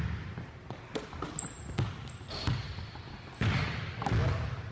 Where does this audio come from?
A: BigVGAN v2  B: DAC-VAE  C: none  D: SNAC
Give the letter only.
C